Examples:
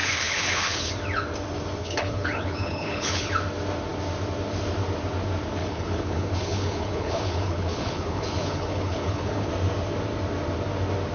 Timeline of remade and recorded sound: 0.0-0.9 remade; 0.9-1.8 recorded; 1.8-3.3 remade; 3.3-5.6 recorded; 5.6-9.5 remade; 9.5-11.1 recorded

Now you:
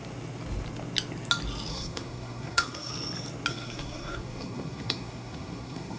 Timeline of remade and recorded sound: 0.0-1.7 recorded; 1.7-2.9 remade; 2.9-3.5 recorded; 3.5-6.0 remade

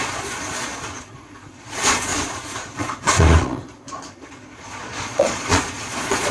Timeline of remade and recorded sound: 0.0-6.3 remade

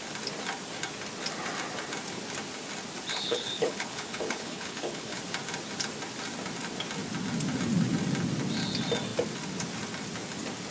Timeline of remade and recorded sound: 0.0-3.1 recorded; 3.1-5.2 remade; 5.2-10.7 recorded